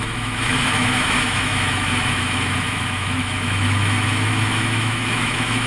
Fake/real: fake